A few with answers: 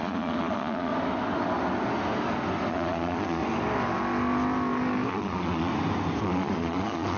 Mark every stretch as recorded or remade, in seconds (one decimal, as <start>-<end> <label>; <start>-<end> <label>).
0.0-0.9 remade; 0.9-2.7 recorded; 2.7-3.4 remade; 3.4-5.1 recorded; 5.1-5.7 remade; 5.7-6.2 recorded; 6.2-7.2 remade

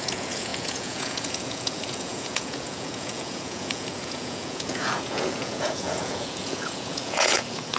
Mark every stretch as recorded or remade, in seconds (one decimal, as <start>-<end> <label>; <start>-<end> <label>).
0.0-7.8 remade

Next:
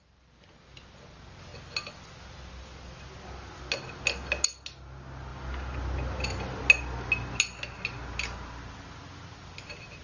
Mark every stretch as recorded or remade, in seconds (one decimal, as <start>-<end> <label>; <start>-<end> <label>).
0.0-10.0 recorded

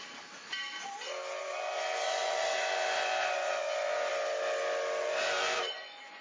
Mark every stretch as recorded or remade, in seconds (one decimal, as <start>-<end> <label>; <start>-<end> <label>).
0.0-1.4 recorded; 1.4-4.1 remade; 4.1-5.0 recorded; 5.0-6.2 remade